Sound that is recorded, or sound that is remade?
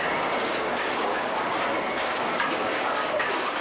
remade